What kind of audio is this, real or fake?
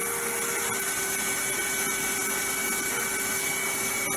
real